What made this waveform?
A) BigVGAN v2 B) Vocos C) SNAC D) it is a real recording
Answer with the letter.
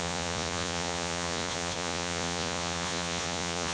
B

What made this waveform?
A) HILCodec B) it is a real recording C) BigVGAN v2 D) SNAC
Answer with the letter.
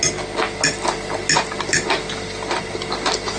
B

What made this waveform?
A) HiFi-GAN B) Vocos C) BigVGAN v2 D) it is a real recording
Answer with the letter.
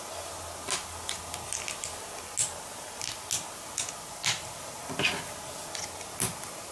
D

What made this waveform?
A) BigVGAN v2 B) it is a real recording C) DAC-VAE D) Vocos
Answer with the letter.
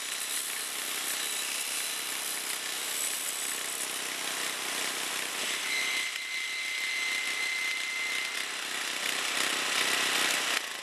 B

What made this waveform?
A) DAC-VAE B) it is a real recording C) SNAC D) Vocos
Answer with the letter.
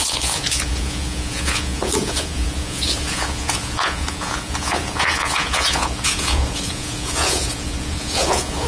D